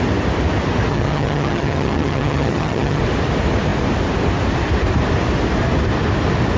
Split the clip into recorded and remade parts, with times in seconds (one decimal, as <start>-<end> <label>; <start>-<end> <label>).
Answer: 0.0-0.9 recorded; 0.9-3.0 remade; 3.0-6.6 recorded